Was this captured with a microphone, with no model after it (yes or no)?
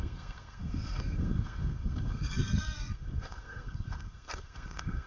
no